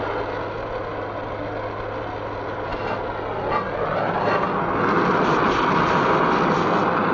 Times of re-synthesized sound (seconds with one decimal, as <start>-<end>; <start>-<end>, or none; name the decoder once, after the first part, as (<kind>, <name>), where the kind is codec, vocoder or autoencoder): none